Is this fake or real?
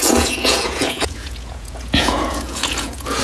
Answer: fake